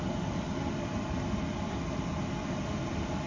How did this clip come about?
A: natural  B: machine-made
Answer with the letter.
A